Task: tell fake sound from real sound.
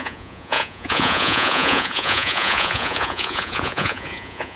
fake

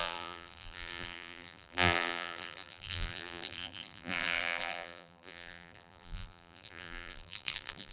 fake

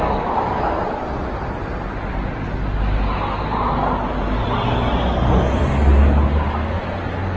real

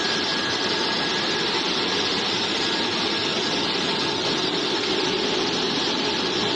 real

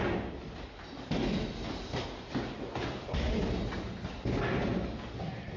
real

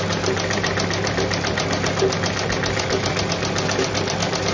real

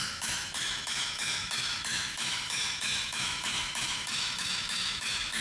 fake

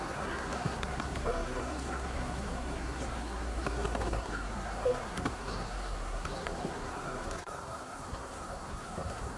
fake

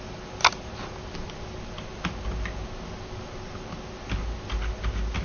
real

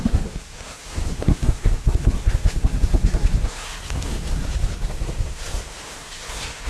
fake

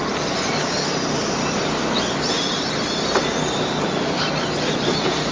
real